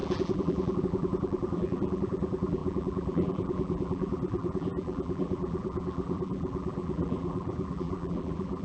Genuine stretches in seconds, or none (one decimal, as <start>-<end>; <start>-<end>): none